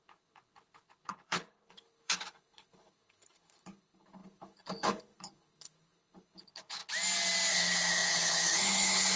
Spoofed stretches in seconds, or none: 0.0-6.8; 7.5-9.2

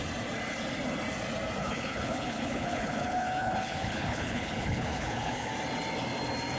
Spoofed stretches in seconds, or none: 1.6-5.5

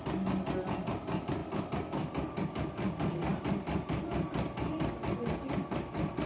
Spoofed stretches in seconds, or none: none